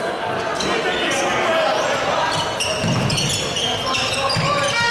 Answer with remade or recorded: recorded